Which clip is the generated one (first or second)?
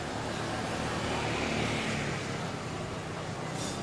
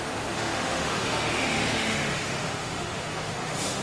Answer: second